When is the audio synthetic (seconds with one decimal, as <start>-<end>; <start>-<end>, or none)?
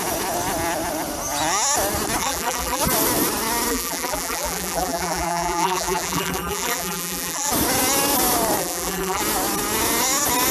2.2-2.8; 3.7-7.5; 8.6-9.2